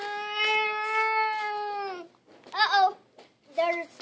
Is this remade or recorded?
recorded